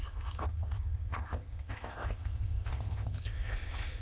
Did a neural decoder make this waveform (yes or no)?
yes